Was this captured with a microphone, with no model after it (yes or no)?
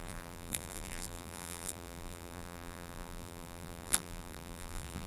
no